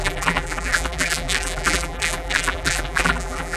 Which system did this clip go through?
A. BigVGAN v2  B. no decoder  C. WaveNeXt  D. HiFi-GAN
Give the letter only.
A